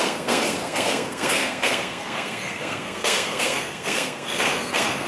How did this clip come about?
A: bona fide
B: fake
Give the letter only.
B